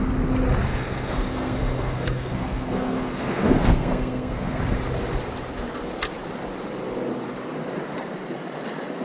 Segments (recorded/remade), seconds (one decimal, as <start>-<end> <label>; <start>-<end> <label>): 0.0-0.7 recorded; 0.7-4.6 remade; 4.6-9.0 recorded